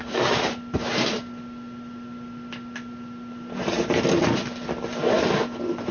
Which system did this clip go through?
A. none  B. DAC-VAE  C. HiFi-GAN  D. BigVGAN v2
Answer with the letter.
A